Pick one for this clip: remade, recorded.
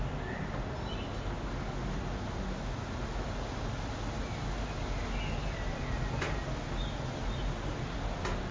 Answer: recorded